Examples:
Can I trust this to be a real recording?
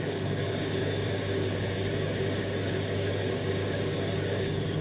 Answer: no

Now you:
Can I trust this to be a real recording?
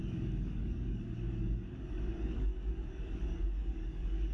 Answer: no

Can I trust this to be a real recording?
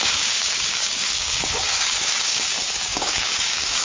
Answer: no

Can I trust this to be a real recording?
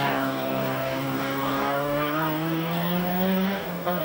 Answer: no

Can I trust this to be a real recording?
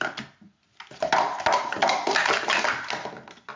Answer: yes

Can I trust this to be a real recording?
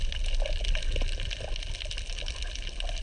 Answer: yes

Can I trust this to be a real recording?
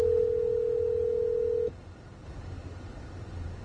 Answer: yes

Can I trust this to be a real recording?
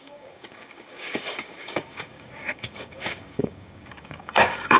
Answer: no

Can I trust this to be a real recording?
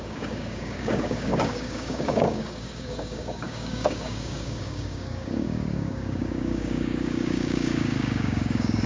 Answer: no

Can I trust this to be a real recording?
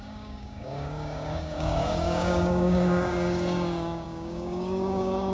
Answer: no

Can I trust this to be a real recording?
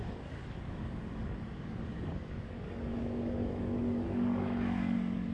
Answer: no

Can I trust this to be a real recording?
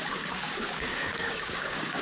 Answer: no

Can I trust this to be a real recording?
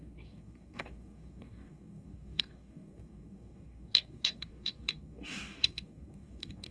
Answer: no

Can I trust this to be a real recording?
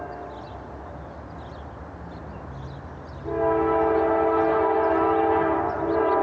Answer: yes